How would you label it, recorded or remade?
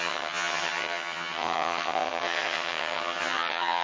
remade